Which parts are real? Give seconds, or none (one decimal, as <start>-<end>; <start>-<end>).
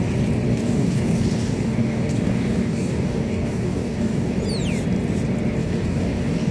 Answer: 0.0-0.5; 4.4-5.6